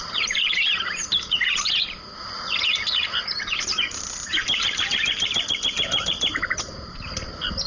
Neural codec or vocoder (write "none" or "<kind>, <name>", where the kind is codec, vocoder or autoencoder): vocoder, BigVGAN v2